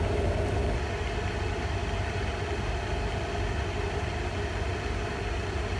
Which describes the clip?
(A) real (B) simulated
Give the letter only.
A